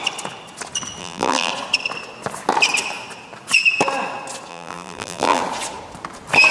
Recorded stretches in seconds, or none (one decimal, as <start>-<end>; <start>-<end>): 0.0-1.0; 1.5-4.5; 5.4-6.5